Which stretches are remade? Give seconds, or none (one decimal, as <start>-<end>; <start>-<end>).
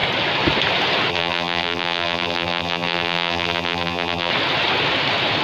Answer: 1.1-4.3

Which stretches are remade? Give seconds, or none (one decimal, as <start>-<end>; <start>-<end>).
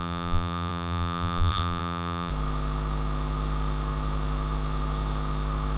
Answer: 0.0-2.3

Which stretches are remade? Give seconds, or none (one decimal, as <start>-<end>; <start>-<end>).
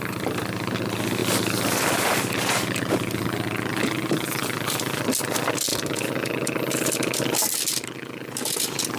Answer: none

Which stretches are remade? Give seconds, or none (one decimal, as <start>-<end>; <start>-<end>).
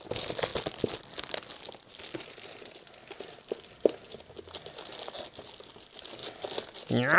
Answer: none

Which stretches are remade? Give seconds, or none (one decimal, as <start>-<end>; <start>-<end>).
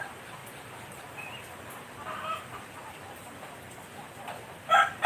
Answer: 0.4-1.0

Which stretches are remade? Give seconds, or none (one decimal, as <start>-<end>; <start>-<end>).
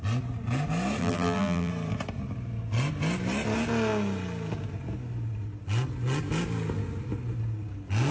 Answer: 1.0-1.7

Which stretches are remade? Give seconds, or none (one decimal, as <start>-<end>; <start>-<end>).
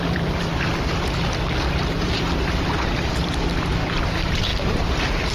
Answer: 0.0-0.5; 1.8-3.2; 4.1-5.3